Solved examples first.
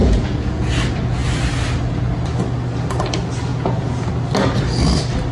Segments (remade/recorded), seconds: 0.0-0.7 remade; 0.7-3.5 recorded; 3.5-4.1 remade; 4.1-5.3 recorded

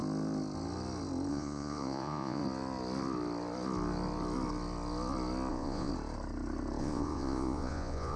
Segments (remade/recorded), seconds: 0.0-1.3 recorded; 1.3-2.4 remade; 2.4-5.5 recorded; 5.5-5.9 remade; 5.9-6.8 recorded; 6.8-8.2 remade